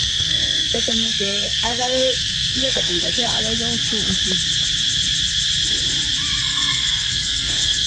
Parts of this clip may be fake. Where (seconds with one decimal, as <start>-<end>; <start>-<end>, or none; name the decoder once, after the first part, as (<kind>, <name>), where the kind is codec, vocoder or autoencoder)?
0.0-3.4 (codec, SNAC); 6.4-7.9